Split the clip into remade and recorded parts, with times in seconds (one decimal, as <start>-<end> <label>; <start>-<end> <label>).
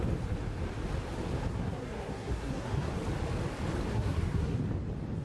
0.0-1.5 recorded; 1.5-2.9 remade; 2.9-3.9 recorded; 3.9-4.6 remade; 4.6-5.2 recorded